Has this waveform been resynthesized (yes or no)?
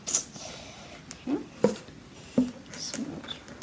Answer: no